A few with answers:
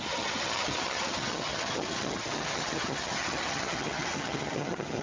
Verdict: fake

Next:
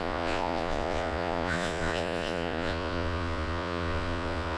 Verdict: fake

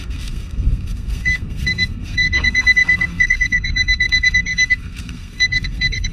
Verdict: fake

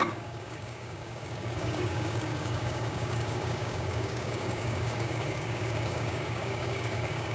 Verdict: fake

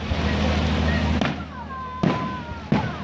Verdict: real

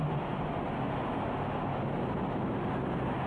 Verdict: real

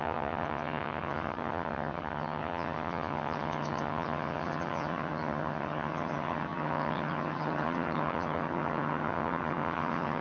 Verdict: fake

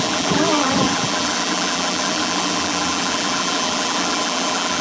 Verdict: fake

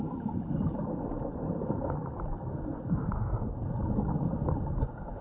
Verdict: fake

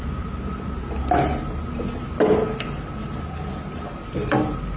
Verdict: real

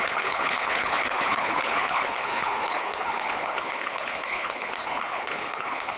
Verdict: fake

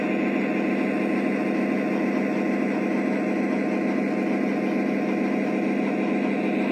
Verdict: real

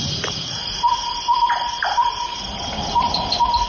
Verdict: real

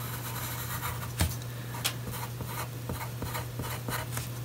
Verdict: real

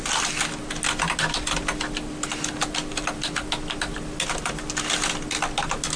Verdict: real